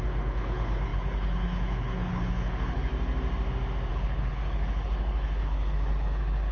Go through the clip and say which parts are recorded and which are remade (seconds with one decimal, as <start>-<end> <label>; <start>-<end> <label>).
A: 0.0-2.9 remade; 2.9-3.9 recorded; 3.9-6.5 remade